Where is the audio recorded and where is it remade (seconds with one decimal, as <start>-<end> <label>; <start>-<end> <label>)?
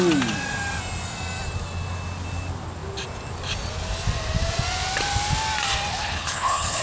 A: 0.0-5.9 recorded; 5.9-6.8 remade